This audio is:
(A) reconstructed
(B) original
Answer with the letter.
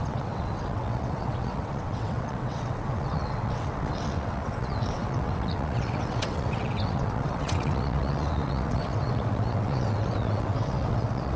A